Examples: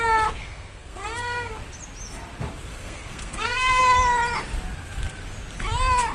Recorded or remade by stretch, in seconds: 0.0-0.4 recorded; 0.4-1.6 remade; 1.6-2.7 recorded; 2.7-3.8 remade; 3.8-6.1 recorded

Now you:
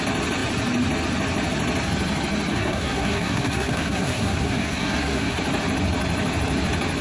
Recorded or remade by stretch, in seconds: 0.0-2.5 recorded; 2.5-5.4 remade; 5.4-7.0 recorded

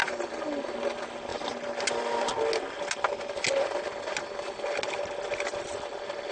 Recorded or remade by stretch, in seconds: 0.0-6.3 recorded

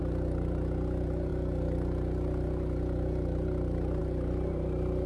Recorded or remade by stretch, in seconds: 0.0-5.1 recorded

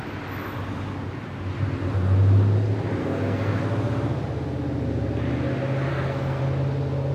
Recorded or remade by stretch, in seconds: 0.0-3.0 recorded; 3.0-3.6 remade; 3.6-5.9 recorded; 5.9-6.4 remade; 6.4-7.1 recorded

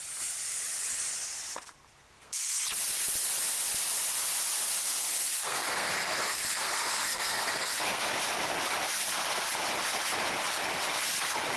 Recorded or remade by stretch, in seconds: 0.0-2.0 recorded; 2.0-2.6 remade; 2.6-4.8 recorded; 4.8-8.1 remade; 8.1-11.6 recorded